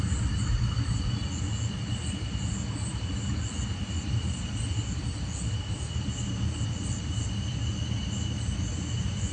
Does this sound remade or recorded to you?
recorded